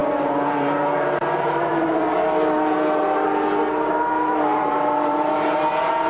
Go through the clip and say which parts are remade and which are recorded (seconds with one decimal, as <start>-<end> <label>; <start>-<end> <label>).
0.0-1.7 remade; 1.7-4.5 recorded; 4.5-6.1 remade